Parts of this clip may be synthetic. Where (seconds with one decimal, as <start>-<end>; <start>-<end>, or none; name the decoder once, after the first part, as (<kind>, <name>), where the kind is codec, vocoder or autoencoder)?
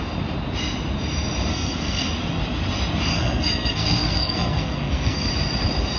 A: 1.5-2.1 (codec, SNAC); 3.1-5.3